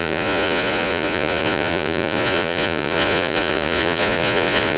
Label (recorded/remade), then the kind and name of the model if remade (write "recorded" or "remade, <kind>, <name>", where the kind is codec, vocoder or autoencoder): remade, vocoder, Vocos